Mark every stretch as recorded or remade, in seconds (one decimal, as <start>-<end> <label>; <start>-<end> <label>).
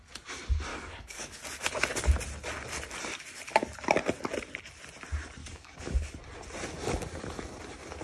0.0-0.7 recorded; 0.7-1.4 remade; 1.4-5.4 recorded; 5.4-6.1 remade; 6.1-8.0 recorded